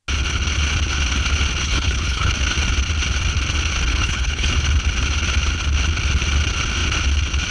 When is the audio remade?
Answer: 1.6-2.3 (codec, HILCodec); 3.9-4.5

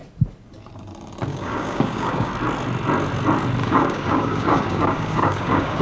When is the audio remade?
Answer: 1.3-2.3 (codec, DAC); 3.6-5.8

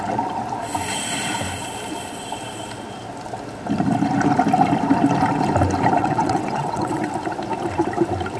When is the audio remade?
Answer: 6.0-7.1 (vocoder, WaveNeXt)

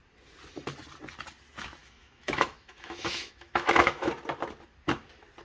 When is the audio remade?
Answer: 1.8-4.1 (autoencoder, DAC-VAE)